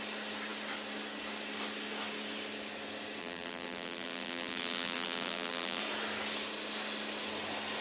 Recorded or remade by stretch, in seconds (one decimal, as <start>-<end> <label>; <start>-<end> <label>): 0.0-3.2 recorded; 3.2-5.8 remade; 5.8-7.8 recorded